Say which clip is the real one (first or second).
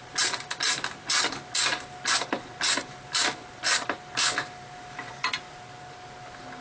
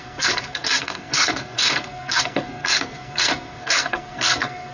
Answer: first